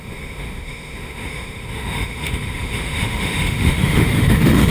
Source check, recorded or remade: remade